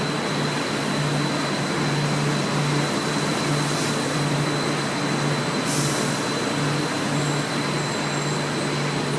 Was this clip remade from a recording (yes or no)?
no